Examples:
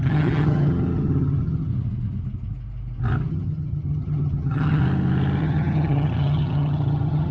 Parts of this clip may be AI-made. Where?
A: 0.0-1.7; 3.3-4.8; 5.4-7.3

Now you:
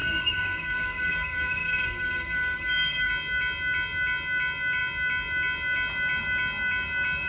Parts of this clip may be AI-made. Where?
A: 0.0-3.1

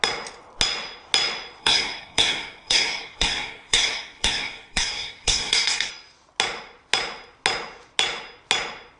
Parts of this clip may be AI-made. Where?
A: 1.6-5.9

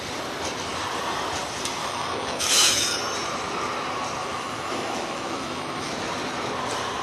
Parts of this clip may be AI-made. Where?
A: 1.8-3.0; 4.2-5.9